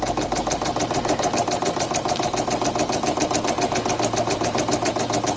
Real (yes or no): yes